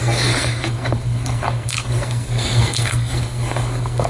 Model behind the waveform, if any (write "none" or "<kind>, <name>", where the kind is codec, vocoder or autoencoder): codec, SNAC